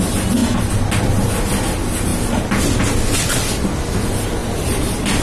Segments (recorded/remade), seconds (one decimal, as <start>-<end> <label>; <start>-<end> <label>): 0.0-5.2 recorded